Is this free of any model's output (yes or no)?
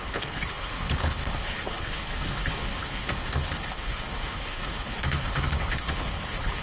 no